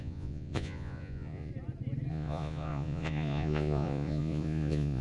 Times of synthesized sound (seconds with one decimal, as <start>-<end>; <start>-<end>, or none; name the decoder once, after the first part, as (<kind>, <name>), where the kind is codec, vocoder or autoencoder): 0.0-1.5 (vocoder, Vocos); 2.1-5.0